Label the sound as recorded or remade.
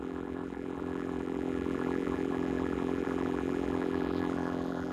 remade